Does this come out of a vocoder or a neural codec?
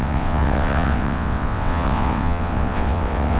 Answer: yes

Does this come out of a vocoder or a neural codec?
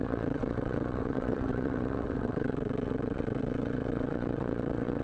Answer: yes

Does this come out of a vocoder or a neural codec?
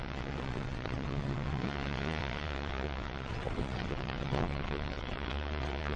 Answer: yes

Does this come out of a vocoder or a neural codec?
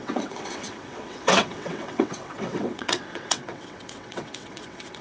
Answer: yes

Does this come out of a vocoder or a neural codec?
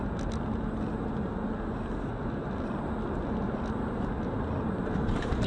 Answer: no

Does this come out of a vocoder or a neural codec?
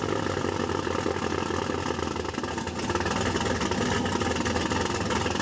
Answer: no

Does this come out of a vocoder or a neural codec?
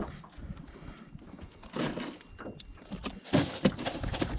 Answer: no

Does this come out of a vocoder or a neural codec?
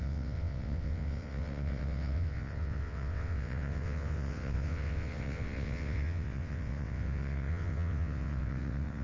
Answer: yes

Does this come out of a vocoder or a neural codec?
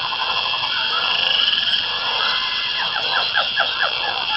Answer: yes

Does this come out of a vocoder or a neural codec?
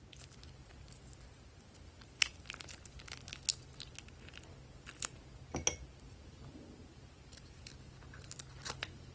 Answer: no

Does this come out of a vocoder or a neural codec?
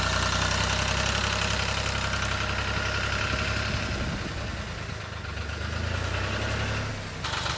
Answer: no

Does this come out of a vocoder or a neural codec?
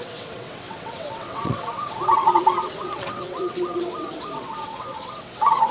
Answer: yes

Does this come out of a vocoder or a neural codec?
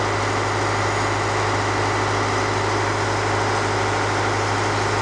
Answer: no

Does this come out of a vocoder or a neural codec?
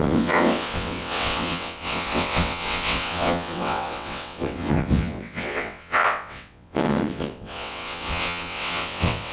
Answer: yes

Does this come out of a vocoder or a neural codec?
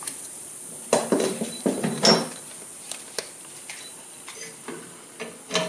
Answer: no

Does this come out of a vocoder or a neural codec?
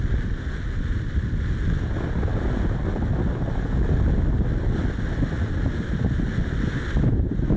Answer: no